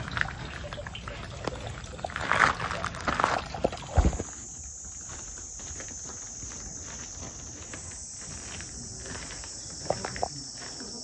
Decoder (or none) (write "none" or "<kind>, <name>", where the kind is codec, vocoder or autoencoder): none